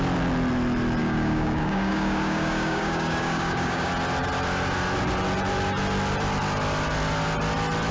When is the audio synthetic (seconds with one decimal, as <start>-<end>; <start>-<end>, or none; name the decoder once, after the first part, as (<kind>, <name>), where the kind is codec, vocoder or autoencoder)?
1.0-3.9 (codec, DAC)